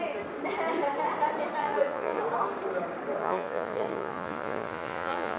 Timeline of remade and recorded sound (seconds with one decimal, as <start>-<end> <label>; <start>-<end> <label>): 0.0-1.6 recorded; 1.6-2.2 remade; 2.2-3.2 recorded; 3.2-5.4 remade